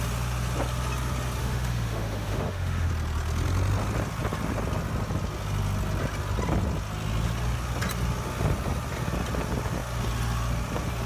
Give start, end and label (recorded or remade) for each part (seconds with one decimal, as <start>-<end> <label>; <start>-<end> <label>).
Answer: 0.0-1.4 recorded; 1.4-2.9 remade; 2.9-11.1 recorded